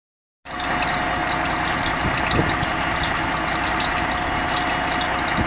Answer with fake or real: real